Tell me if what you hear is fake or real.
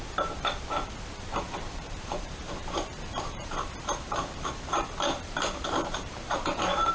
fake